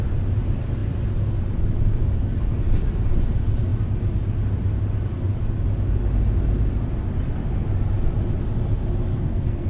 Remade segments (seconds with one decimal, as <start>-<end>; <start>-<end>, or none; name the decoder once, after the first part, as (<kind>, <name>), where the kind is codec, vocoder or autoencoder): 9.1-9.7 (codec, SNAC)